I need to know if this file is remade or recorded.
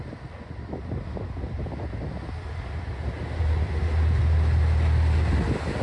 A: recorded